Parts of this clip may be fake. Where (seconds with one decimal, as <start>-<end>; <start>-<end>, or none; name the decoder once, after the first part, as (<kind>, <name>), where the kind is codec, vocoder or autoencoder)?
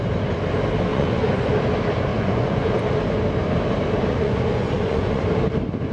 0.9-1.5 (vocoder, Vocos); 2.1-2.7; 4.1-5.2